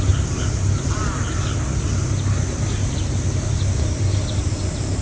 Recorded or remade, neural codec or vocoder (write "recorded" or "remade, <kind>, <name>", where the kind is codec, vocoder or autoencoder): recorded